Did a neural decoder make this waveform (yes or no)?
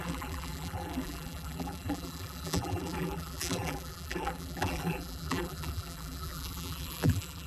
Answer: yes